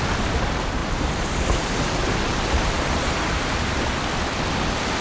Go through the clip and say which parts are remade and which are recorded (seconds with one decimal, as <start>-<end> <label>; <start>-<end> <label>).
0.0-0.8 recorded; 0.8-3.8 remade; 3.8-5.0 recorded